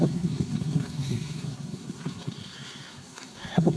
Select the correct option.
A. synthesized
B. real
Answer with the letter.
A